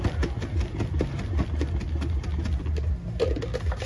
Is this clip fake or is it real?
real